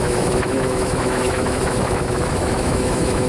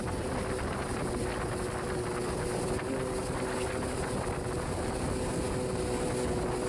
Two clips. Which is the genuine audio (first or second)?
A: second